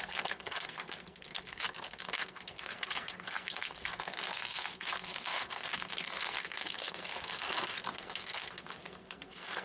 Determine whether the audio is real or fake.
fake